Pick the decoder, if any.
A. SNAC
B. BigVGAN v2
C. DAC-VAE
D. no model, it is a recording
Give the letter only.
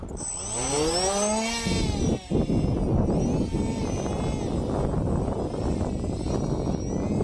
D